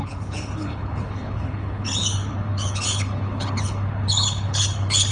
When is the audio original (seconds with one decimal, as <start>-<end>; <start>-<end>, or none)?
none